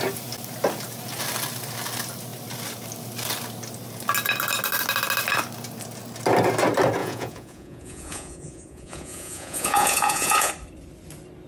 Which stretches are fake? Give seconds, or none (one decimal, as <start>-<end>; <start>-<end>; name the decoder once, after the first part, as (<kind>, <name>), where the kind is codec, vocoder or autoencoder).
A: 7.0-10.5 (vocoder, Vocos)